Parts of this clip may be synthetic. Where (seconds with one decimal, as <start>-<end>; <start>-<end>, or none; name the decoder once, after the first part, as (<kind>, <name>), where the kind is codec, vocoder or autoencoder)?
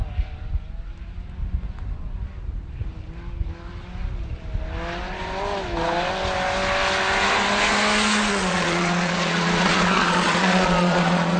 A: 8.3-11.4 (vocoder, Vocos)